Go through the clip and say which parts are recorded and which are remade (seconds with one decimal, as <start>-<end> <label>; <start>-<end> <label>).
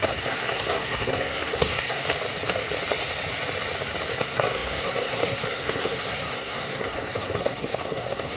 0.0-2.0 remade; 2.0-4.1 recorded; 4.1-8.4 remade